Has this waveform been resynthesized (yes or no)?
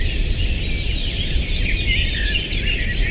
no